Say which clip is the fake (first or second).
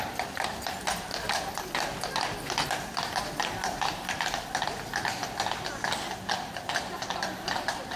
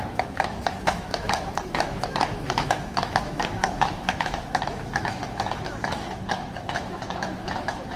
second